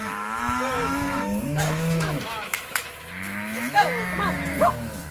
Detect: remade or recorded remade